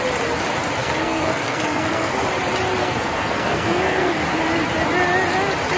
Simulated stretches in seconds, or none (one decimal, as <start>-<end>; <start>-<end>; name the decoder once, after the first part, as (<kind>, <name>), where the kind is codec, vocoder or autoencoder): 0.8-2.2 (codec, SNAC); 2.8-4.2